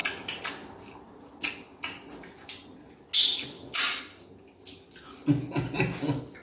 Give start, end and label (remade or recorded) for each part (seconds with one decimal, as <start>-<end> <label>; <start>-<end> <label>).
0.0-6.4 recorded

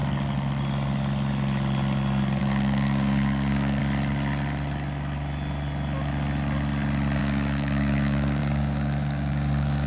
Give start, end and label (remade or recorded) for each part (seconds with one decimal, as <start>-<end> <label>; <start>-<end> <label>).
0.0-2.4 recorded; 2.4-3.8 remade; 3.8-7.2 recorded; 7.2-9.9 remade

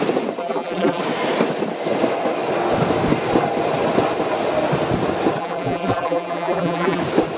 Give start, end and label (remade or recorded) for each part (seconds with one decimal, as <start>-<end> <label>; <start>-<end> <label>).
0.0-0.4 recorded; 0.4-1.0 remade; 1.0-5.4 recorded; 5.4-7.0 remade; 7.0-7.4 recorded

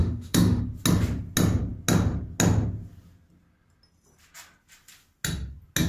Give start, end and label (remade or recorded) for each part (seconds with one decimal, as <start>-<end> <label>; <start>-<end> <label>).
0.0-0.6 remade; 0.6-5.9 recorded

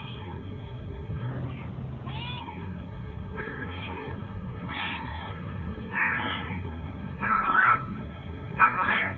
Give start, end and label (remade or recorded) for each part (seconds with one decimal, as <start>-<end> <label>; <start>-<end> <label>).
0.0-1.3 remade; 1.3-2.4 recorded; 2.4-9.2 remade

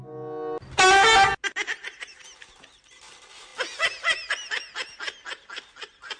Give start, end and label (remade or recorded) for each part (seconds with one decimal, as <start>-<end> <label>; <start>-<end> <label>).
0.0-6.2 recorded

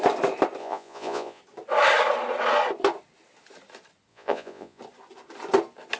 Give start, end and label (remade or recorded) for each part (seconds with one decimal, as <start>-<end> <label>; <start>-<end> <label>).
0.0-0.6 recorded; 0.6-1.4 remade; 1.4-4.1 recorded; 4.1-4.8 remade; 4.8-6.0 recorded

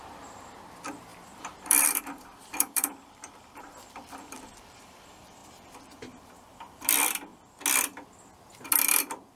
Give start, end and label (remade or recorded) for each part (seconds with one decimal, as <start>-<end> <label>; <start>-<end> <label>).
0.0-5.4 remade; 5.4-6.7 recorded; 6.7-7.3 remade; 7.3-9.0 recorded; 9.0-9.4 remade